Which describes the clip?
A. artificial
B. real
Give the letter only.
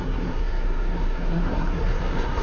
A